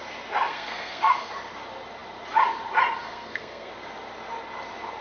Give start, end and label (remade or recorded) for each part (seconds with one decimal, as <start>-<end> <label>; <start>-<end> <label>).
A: 0.0-0.5 recorded; 0.5-1.3 remade; 1.3-3.0 recorded; 3.0-3.7 remade; 3.7-5.0 recorded